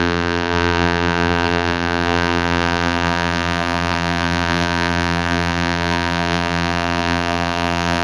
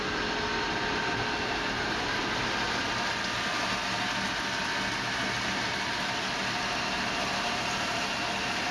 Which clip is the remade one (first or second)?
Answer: first